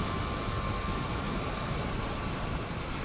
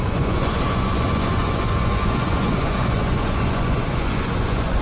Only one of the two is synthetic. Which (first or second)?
second